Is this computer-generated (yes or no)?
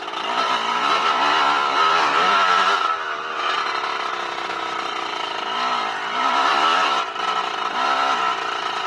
no